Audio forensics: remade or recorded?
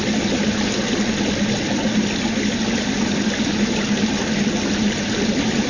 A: recorded